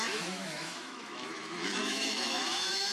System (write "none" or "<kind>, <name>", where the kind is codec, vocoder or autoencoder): autoencoder, DAC-VAE